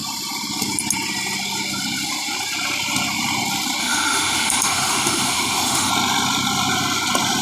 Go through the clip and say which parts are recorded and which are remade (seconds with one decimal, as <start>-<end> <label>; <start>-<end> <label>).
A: 0.0-3.8 recorded; 3.8-5.9 remade; 5.9-7.4 recorded